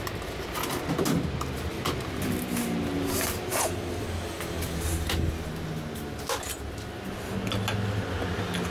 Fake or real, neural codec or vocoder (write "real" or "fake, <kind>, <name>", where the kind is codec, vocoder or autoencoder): real